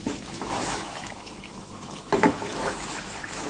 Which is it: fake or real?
fake